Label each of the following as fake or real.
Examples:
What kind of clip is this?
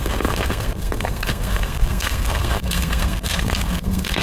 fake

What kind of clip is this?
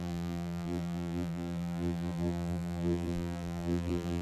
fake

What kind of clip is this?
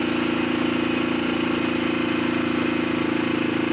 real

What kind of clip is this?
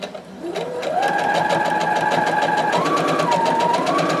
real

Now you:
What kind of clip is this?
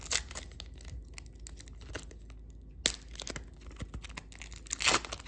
real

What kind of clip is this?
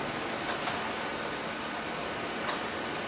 real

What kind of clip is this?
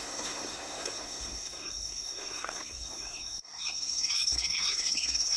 fake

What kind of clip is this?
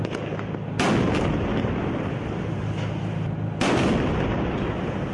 real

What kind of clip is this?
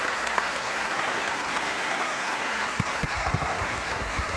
fake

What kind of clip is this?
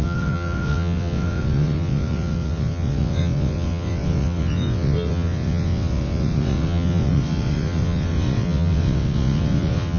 fake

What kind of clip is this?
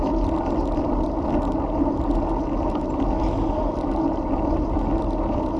real